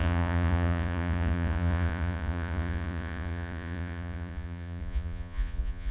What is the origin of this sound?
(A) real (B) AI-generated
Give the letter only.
B